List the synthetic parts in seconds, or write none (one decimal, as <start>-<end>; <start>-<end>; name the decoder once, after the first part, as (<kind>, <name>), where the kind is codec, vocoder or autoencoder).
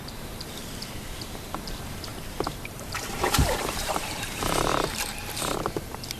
0.0-6.2 (vocoder, BigVGAN v2)